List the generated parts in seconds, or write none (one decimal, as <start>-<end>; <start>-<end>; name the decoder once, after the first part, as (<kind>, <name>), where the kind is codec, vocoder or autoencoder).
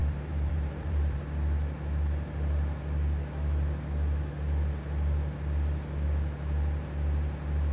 0.0-1.2 (vocoder, BigVGAN v2)